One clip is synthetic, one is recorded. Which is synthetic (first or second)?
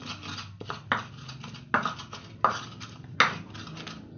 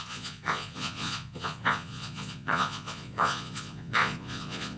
second